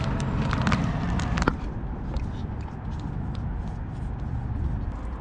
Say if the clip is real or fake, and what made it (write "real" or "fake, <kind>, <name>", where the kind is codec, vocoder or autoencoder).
real